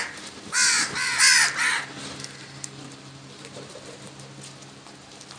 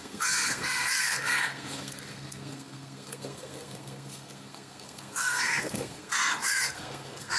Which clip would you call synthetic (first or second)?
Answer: second